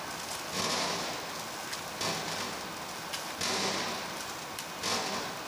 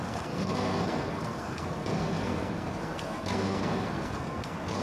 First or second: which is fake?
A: second